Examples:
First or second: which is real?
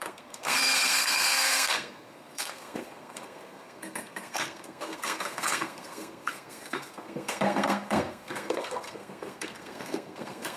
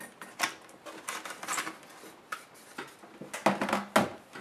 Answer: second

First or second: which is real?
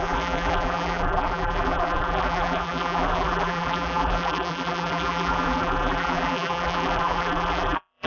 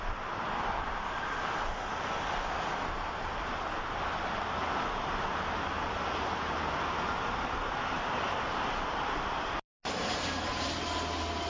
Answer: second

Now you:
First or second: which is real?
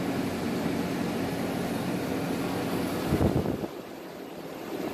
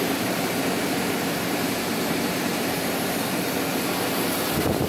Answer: first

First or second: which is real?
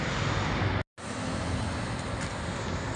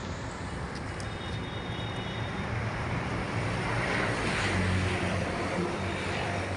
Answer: first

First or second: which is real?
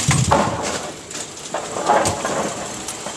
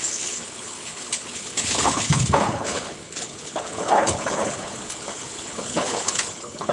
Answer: first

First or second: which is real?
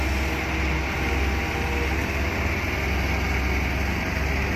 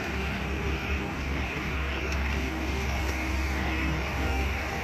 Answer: first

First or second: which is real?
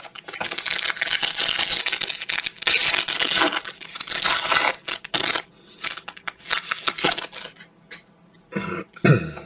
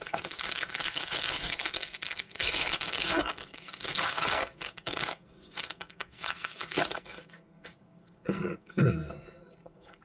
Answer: first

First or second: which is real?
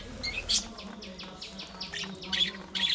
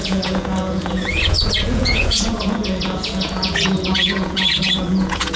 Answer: first